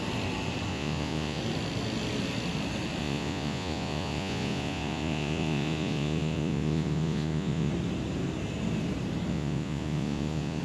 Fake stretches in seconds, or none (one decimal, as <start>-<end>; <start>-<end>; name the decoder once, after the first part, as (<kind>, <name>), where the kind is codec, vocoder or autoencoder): 0.7-1.4 (vocoder, Vocos); 3.0-7.7; 9.3-10.6